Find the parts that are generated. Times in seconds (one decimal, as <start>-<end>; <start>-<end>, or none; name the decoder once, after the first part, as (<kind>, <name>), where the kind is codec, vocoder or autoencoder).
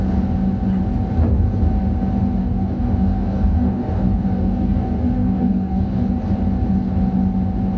2.4-6.1 (codec, DAC)